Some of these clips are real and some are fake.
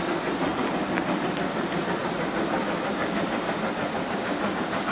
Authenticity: real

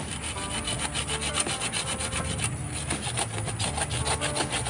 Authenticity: real